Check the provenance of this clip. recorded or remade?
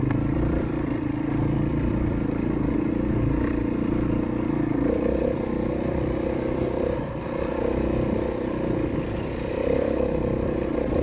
remade